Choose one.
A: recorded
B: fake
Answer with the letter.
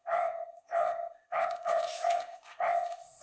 B